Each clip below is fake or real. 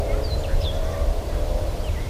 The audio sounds fake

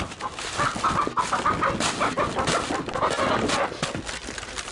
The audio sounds real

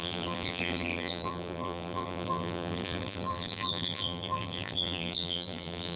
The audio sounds fake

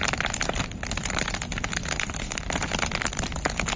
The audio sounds real